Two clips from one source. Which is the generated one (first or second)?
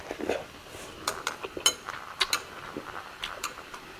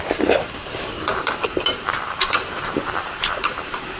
second